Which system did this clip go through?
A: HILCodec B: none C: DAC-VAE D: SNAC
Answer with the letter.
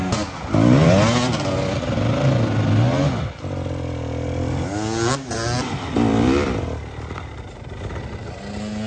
B